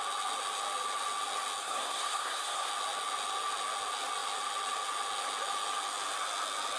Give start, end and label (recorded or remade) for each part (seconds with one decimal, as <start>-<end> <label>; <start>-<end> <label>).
0.0-1.6 recorded; 1.6-2.7 remade; 2.7-6.8 recorded